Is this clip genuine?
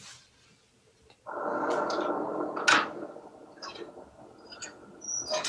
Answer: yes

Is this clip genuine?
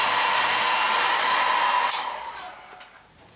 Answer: yes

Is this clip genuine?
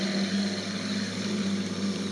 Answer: yes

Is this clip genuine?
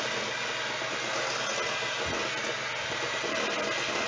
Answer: yes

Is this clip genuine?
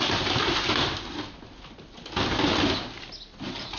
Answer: yes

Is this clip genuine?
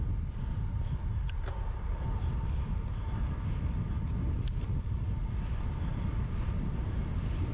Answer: yes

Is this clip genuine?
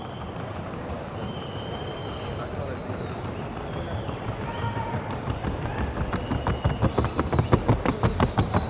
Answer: yes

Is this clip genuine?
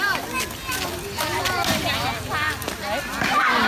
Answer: yes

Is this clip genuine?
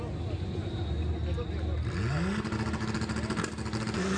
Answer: yes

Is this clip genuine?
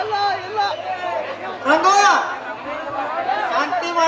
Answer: yes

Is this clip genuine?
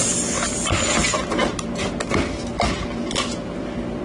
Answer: yes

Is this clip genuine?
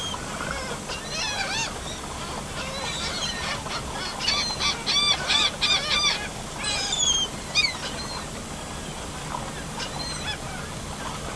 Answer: yes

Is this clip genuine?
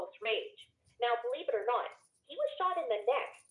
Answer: yes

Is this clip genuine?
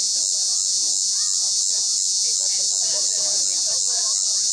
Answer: yes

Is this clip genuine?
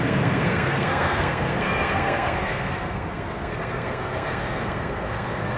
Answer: no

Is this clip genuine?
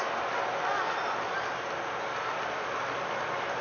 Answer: yes